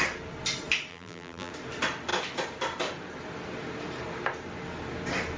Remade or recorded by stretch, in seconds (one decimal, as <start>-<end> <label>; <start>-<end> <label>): 0.0-0.9 recorded; 0.9-1.5 remade; 1.5-5.4 recorded